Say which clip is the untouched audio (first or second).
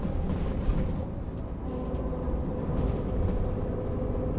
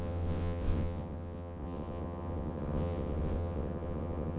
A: first